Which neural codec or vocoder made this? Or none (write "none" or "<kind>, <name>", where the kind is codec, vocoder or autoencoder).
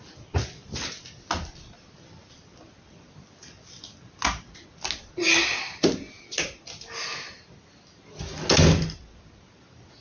none